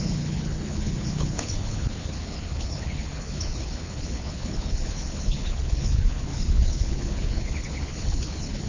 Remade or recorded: remade